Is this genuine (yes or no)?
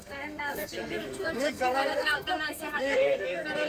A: no